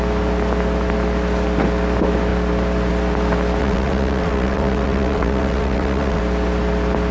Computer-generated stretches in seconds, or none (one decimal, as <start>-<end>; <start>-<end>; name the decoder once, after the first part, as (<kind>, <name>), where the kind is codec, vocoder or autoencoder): 3.6-6.2 (vocoder, WaveNeXt)